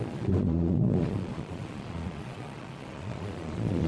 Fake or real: fake